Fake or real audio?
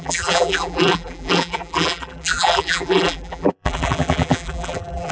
fake